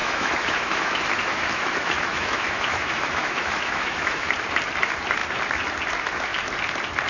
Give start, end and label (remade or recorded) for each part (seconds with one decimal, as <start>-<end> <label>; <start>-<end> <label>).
0.0-4.3 remade; 4.3-7.1 recorded